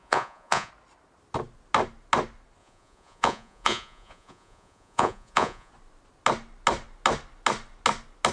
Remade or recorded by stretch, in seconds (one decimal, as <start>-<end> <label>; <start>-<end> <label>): 0.0-0.7 remade; 0.7-2.6 recorded; 2.6-5.7 remade; 5.7-8.3 recorded